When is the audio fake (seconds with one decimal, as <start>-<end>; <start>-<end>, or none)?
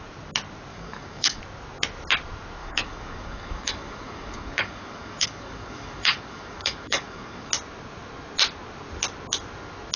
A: 0.7-1.4; 2.6-7.5